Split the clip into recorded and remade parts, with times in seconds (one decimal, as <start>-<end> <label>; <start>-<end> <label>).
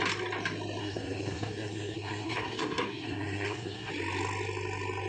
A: 0.0-0.8 recorded; 0.8-3.9 remade; 3.9-5.1 recorded